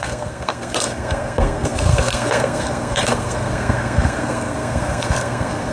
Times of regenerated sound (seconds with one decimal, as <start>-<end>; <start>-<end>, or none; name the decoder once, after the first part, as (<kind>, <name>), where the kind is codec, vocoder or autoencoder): 0.0-5.7 (codec, SNAC)